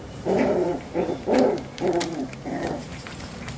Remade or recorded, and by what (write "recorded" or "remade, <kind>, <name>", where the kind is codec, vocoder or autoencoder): remade, vocoder, BigVGAN v2